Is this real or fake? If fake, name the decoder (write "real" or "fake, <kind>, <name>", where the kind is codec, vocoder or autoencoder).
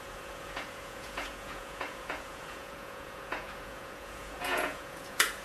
fake, vocoder, Vocos